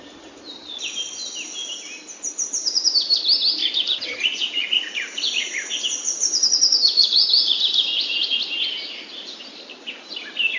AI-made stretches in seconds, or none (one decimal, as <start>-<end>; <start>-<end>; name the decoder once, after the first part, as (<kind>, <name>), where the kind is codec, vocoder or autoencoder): 3.6-8.4 (vocoder, Vocos)